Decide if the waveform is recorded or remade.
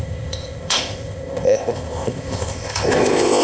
remade